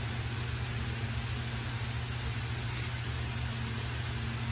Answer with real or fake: real